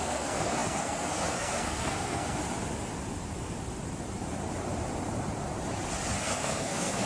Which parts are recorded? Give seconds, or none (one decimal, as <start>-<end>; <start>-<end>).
2.4-6.2